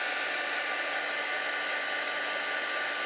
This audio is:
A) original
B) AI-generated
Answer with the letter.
A